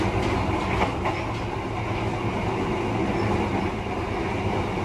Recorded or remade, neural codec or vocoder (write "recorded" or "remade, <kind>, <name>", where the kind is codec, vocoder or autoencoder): recorded